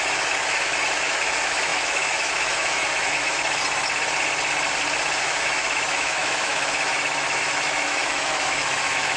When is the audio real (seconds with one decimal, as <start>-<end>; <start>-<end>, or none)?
3.6-5.2